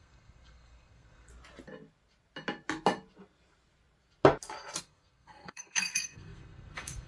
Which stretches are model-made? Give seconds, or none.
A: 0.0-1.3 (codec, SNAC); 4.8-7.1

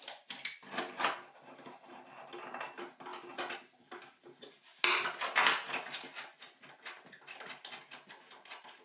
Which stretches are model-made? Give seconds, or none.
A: none

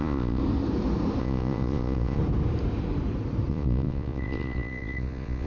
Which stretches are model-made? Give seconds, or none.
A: 0.0-0.4 (vocoder, Vocos); 1.2-2.2; 3.5-5.5